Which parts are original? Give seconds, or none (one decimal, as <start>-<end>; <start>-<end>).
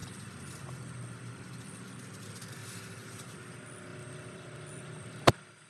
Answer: 1.9-2.6; 3.4-3.9